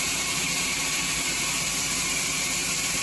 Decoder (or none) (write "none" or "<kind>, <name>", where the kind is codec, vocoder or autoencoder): vocoder, BigVGAN v2